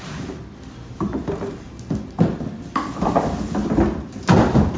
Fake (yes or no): no